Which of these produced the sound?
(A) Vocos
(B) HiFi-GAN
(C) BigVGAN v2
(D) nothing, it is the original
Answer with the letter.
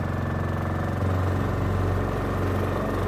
D